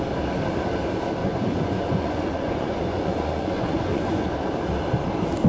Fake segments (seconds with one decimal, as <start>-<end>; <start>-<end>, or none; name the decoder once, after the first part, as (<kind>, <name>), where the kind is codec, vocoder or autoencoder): 1.2-4.3 (vocoder, Vocos)